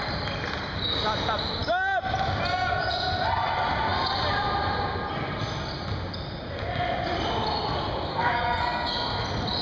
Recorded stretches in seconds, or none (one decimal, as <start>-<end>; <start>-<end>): 0.0-8.1; 8.9-9.6